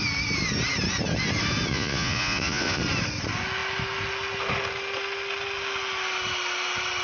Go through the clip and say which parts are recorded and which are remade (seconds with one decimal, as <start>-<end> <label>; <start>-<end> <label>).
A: 0.0-1.7 recorded; 1.7-2.8 remade; 2.8-7.0 recorded